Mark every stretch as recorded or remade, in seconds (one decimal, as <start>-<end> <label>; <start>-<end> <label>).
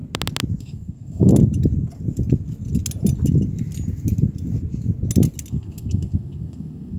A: 0.0-0.6 recorded; 0.6-1.3 remade; 1.3-5.5 recorded; 5.5-7.0 remade